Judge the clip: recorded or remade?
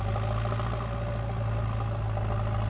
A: recorded